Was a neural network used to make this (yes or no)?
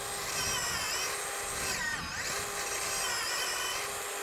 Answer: no